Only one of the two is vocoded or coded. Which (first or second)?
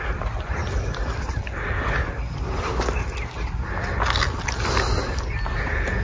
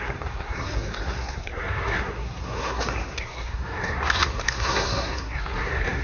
second